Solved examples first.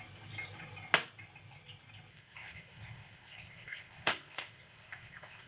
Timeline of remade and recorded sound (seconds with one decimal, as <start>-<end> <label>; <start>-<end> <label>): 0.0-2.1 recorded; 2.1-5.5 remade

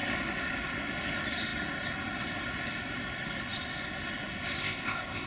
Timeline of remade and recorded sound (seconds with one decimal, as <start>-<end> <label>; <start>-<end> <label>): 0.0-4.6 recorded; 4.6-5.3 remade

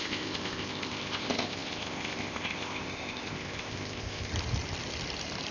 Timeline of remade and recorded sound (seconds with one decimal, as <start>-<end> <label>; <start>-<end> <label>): 0.0-4.3 remade; 4.3-5.5 recorded